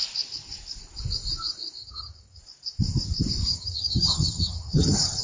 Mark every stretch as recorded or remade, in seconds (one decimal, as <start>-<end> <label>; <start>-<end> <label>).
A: 0.0-1.8 recorded; 1.8-2.4 remade; 2.4-3.5 recorded; 3.5-5.2 remade

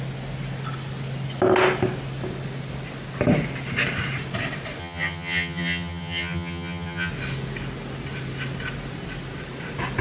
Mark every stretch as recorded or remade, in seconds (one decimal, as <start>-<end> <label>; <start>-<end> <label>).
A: 0.0-4.8 recorded; 4.8-7.1 remade; 7.1-10.0 recorded